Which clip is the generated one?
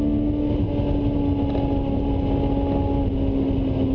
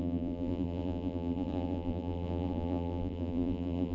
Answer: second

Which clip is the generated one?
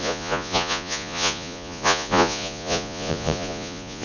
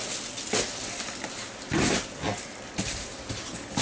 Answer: first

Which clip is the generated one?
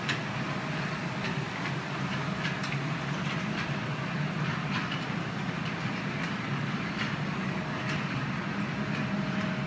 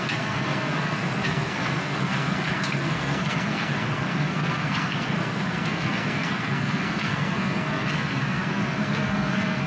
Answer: second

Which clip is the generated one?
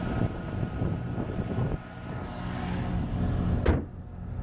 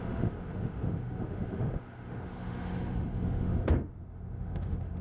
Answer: second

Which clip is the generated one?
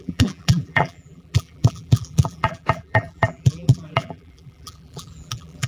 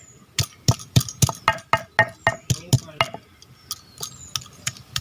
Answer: first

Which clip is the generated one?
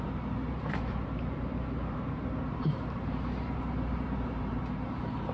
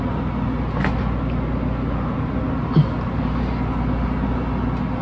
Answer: first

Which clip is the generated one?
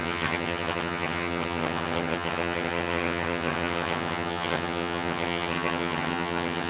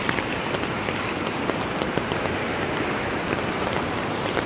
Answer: first